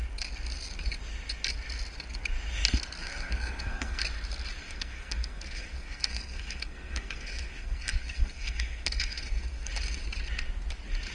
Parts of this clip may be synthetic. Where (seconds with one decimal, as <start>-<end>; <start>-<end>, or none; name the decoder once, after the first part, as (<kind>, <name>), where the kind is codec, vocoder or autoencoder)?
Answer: 3.0-4.0 (codec, SNAC); 4.6-9.7